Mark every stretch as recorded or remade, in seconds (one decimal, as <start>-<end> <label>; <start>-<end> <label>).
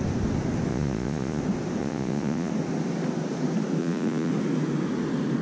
0.0-0.7 recorded; 0.7-1.4 remade; 1.4-1.8 recorded; 1.8-2.5 remade; 2.5-3.8 recorded; 3.8-4.3 remade; 4.3-5.4 recorded